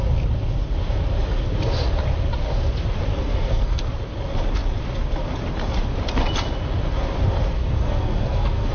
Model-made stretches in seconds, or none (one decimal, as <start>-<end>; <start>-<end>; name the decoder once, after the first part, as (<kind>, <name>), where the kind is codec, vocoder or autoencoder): 3.1-3.8 (codec, SNAC); 7.5-8.7